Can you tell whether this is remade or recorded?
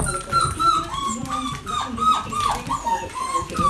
recorded